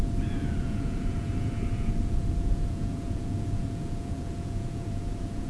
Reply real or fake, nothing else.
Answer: fake